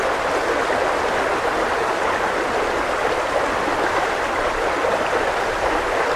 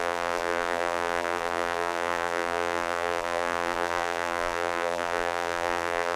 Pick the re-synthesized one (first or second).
second